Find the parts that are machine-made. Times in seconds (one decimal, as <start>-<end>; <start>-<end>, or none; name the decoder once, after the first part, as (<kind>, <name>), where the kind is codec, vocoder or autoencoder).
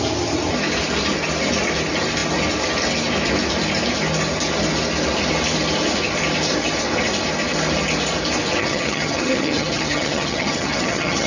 8.6-11.3 (vocoder, HiFi-GAN)